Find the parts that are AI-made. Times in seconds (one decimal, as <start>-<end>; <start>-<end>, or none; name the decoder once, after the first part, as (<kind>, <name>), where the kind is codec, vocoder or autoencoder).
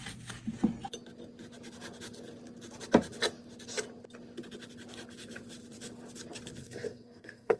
6.6-7.6 (codec, SNAC)